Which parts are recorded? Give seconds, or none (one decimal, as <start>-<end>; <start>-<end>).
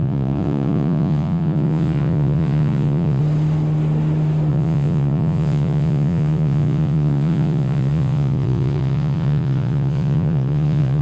3.2-4.5